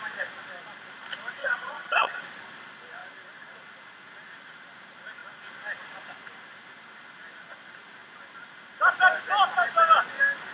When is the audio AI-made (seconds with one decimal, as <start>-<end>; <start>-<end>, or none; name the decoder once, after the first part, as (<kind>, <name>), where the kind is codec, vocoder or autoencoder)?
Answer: 1.4-2.2 (vocoder, HiFi-GAN)